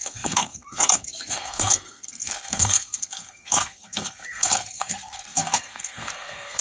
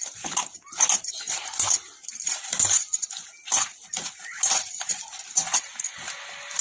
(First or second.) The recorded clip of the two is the second